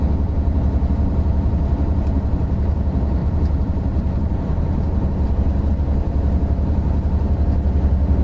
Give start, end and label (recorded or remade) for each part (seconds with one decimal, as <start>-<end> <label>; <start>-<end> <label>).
0.0-3.2 recorded; 3.2-5.7 remade; 5.7-8.2 recorded

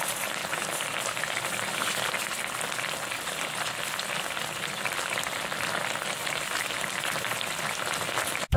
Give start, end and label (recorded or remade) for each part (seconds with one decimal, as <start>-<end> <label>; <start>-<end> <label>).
0.0-0.4 recorded; 0.4-5.6 remade; 5.6-6.2 recorded; 6.2-8.6 remade

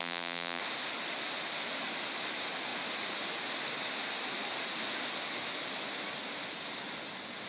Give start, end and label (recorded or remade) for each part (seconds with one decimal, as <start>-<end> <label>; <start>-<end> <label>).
0.0-0.6 remade; 0.6-7.5 recorded

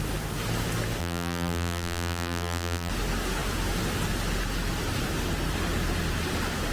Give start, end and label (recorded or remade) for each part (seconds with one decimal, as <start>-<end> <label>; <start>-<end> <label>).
0.0-1.0 recorded; 1.0-2.9 remade; 2.9-6.7 recorded

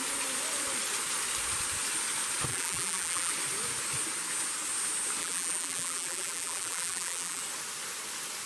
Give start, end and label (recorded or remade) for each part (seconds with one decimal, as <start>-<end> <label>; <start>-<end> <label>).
0.0-2.5 recorded; 2.5-3.3 remade; 3.3-5.2 recorded; 5.2-7.4 remade; 7.4-8.5 recorded